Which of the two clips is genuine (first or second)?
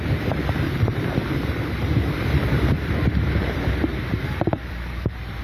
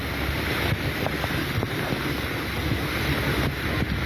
second